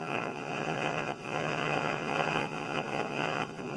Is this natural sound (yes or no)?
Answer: no